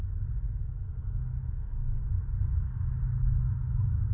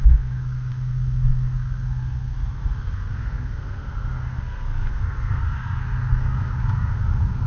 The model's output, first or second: second